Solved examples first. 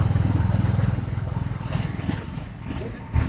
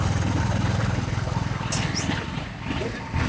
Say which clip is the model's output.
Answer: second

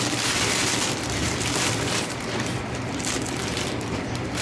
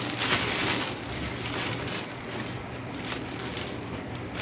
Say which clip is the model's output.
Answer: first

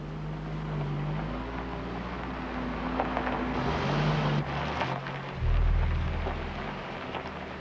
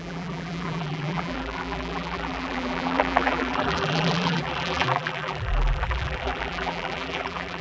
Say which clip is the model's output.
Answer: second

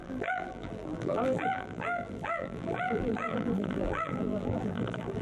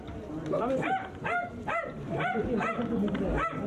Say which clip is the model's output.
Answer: first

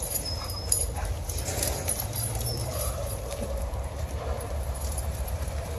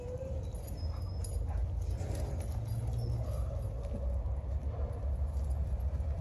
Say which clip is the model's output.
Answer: first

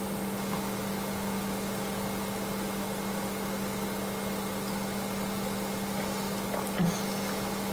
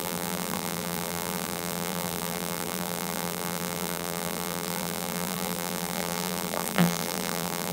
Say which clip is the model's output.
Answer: second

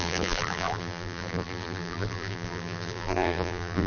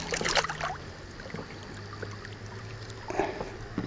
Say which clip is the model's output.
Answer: first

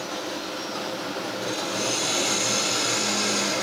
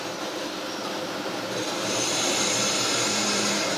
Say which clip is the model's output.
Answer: second